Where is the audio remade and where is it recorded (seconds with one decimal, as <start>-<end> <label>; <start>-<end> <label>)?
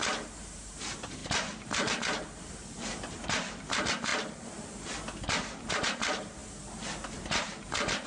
0.0-4.1 remade; 4.1-5.7 recorded; 5.7-6.4 remade; 6.4-7.0 recorded; 7.0-8.1 remade